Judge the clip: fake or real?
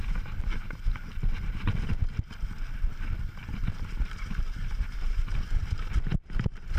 real